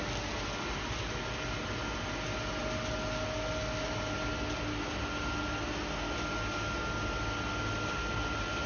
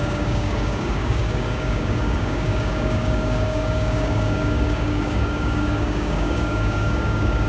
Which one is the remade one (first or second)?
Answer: second